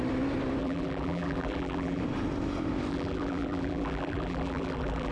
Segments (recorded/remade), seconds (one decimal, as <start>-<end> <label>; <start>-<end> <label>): 0.0-0.6 recorded; 0.6-2.0 remade; 2.0-2.9 recorded; 2.9-5.1 remade